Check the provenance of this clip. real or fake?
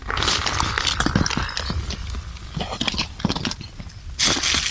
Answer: real